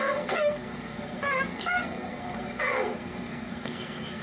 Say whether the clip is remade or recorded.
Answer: remade